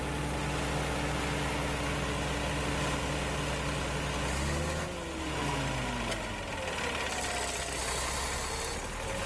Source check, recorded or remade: recorded